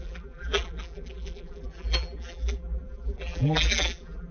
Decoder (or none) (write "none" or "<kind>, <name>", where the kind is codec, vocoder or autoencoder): vocoder, BigVGAN v2